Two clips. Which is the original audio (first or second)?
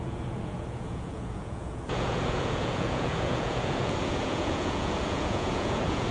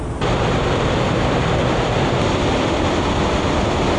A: second